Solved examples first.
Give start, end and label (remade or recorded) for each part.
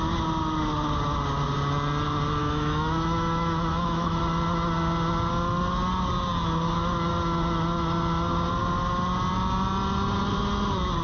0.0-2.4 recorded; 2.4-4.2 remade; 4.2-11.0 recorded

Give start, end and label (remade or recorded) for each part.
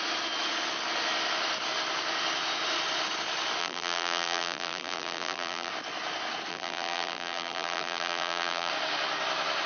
0.0-3.6 recorded; 3.6-5.7 remade; 5.7-6.5 recorded; 6.5-8.7 remade; 8.7-9.7 recorded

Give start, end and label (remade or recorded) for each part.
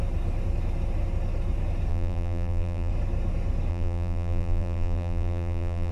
0.0-1.9 recorded; 1.9-2.9 remade; 2.9-3.7 recorded; 3.7-5.9 remade